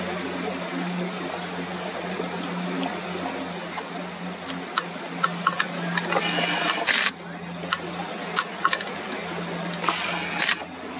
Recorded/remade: recorded